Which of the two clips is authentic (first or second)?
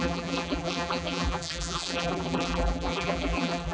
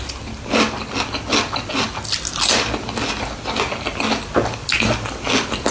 second